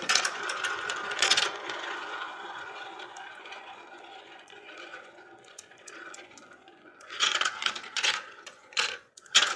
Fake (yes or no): yes